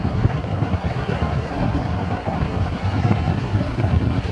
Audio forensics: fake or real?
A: fake